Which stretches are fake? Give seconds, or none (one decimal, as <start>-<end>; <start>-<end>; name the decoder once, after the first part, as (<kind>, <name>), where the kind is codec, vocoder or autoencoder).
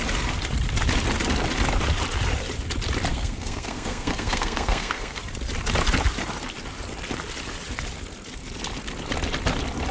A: 3.1-5.2 (codec, SNAC)